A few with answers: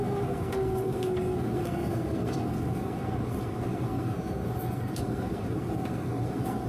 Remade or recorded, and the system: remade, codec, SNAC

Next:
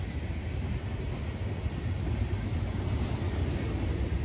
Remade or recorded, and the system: recorded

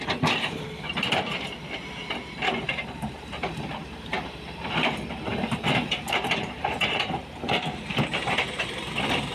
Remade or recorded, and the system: remade, vocoder, BigVGAN v2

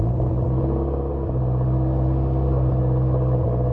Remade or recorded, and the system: recorded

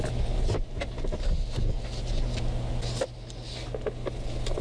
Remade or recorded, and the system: recorded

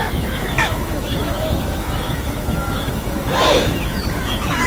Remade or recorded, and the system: remade, autoencoder, DAC-VAE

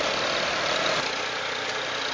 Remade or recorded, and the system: recorded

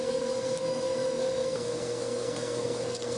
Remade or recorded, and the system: remade, codec, SNAC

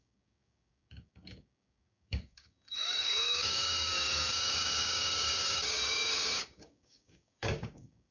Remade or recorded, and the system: remade, codec, DAC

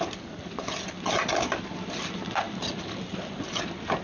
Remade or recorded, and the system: recorded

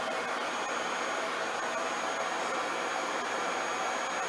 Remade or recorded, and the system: recorded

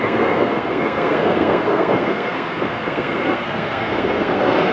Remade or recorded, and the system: remade, codec, SNAC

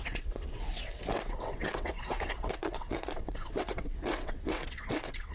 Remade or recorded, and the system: remade, vocoder, WaveNeXt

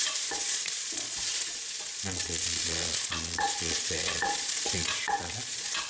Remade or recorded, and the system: remade, vocoder, Vocos